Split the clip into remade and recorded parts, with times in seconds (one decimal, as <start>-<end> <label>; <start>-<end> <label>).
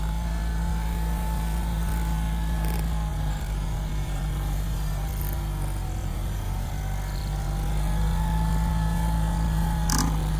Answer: 0.0-3.1 recorded; 3.1-5.1 remade; 5.1-6.0 recorded; 6.0-6.7 remade; 6.7-10.4 recorded